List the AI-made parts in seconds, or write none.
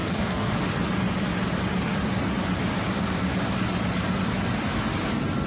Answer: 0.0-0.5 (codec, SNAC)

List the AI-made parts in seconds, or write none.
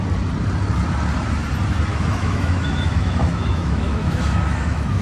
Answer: 1.9-5.0 (autoencoder, DAC-VAE)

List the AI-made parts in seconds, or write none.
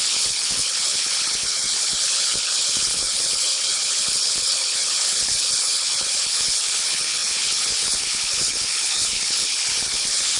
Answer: 0.0-10.4 (codec, HILCodec)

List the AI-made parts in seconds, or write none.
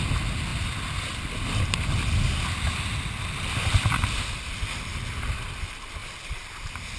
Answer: none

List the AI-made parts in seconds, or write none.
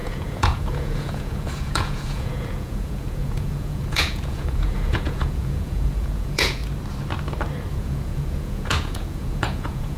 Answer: 0.0-6.6 (vocoder, Vocos); 7.7-10.0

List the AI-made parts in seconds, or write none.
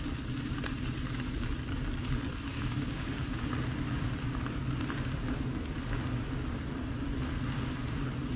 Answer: 2.5-3.5 (codec, DAC)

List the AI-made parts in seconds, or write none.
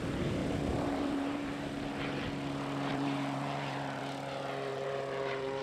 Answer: 0.4-1.7 (vocoder, BigVGAN v2); 2.9-4.0; 4.7-5.6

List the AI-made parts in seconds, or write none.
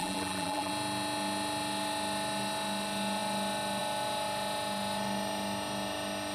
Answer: 0.0-0.7 (vocoder, BigVGAN v2)